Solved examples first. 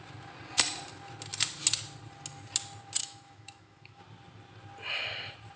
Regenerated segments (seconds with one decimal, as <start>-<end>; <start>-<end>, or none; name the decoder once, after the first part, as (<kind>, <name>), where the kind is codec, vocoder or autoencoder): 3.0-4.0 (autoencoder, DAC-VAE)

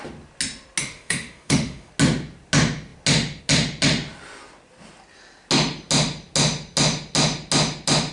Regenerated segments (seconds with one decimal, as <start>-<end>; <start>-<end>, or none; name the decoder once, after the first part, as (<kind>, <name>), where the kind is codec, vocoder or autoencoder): 0.8-1.9 (autoencoder, DAC-VAE)

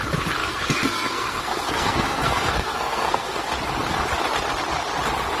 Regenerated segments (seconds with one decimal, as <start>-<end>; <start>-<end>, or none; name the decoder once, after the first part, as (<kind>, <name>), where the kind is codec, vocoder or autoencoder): 0.4-3.5 (codec, SNAC)

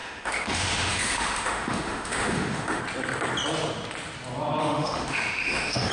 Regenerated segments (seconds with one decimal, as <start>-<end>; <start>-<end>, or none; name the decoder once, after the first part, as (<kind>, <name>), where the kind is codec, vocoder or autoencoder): 0.0-2.8 (autoencoder, DAC-VAE); 4.6-5.9

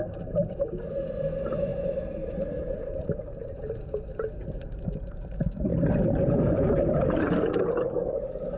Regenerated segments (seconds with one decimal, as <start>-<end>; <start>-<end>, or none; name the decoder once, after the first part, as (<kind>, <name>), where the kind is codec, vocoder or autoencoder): 1.7-5.0 (vocoder, BigVGAN v2); 5.7-8.1